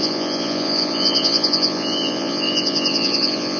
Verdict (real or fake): fake